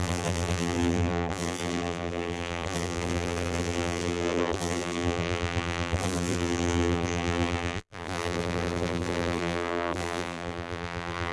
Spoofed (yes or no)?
yes